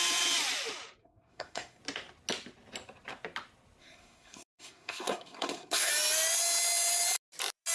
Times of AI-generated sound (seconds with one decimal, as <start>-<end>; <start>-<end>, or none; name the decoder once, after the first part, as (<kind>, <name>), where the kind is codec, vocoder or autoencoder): 1.0-1.8 (codec, SNAC); 3.8-5.9